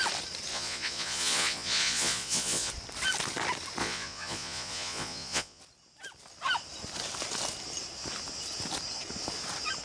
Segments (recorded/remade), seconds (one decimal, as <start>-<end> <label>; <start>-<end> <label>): 0.0-0.5 recorded; 0.5-2.7 remade; 2.7-3.8 recorded; 3.8-5.6 remade; 5.6-9.8 recorded